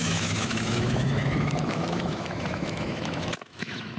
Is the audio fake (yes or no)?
yes